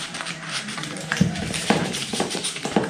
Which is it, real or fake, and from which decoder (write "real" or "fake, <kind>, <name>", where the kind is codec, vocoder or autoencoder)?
fake, vocoder, BigVGAN v2